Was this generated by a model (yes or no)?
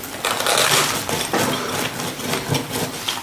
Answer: no